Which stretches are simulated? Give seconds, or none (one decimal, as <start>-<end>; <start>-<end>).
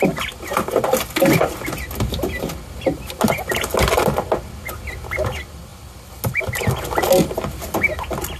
none